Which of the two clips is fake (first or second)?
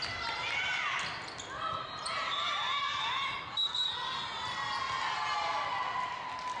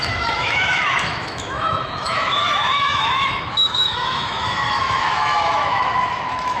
second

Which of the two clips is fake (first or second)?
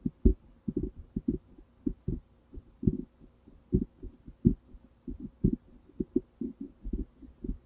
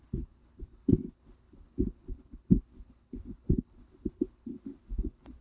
second